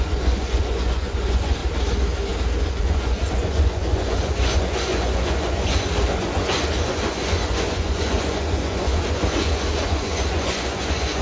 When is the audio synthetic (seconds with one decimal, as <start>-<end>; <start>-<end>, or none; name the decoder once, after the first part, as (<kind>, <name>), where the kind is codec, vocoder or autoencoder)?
0.0-1.6 (vocoder, Vocos); 2.7-11.2